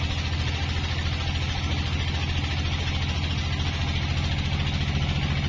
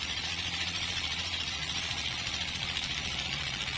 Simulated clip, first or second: second